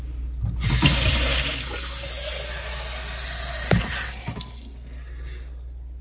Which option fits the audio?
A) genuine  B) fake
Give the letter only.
A